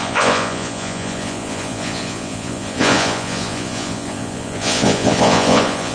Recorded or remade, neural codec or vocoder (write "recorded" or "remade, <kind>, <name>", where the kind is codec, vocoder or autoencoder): remade, vocoder, Vocos